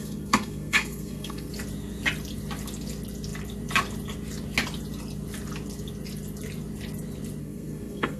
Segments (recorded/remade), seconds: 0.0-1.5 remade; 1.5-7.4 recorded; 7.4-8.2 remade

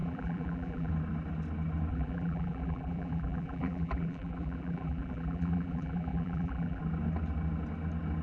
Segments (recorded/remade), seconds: 0.0-0.9 remade; 0.9-1.9 recorded; 1.9-6.8 remade; 6.8-8.2 recorded

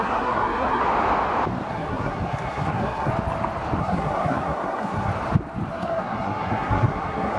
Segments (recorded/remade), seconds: 0.0-0.8 remade; 0.8-1.7 recorded; 1.7-3.1 remade; 3.1-3.8 recorded; 3.8-5.1 remade; 5.1-5.7 recorded; 5.7-7.4 remade

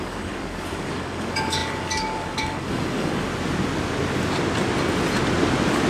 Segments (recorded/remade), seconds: 0.0-3.3 remade; 3.3-5.9 recorded

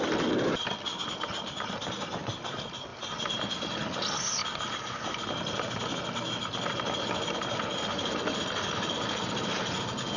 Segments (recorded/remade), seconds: 0.0-10.2 recorded